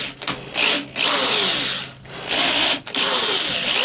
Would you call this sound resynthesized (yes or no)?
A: no